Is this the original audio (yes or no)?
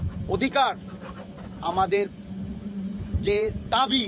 no